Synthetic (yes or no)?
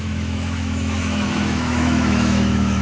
yes